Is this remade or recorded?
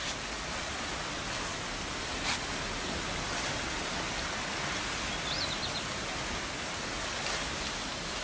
recorded